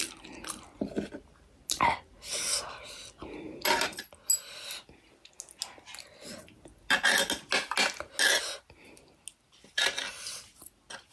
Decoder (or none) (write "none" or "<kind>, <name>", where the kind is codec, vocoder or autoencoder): none